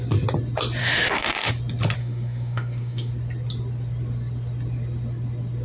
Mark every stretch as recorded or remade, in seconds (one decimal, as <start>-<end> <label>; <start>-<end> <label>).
0.0-0.8 recorded; 0.8-1.5 remade; 1.5-2.0 recorded; 2.0-3.1 remade; 3.1-5.6 recorded